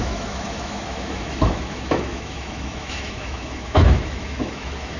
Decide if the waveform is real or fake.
fake